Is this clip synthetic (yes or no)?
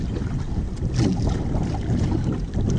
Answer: no